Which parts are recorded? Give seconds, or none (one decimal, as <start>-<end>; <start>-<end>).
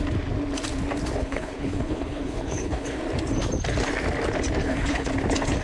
0.0-1.2; 3.0-4.6; 5.1-5.6